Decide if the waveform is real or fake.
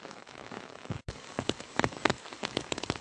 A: fake